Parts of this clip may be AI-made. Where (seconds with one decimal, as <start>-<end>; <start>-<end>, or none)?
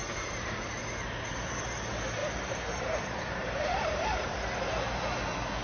0.0-0.7; 2.2-4.2